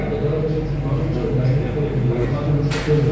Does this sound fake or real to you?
real